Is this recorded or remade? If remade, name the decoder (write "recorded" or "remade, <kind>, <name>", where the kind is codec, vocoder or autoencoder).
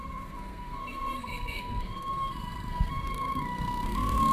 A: remade, codec, SNAC